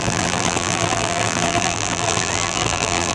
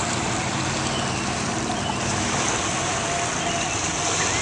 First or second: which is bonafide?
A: second